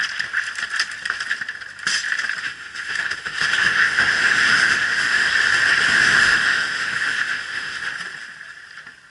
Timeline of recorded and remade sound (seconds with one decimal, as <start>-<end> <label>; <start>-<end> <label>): 0.0-2.4 recorded; 2.4-5.3 remade; 5.3-5.9 recorded; 5.9-7.9 remade; 7.9-9.1 recorded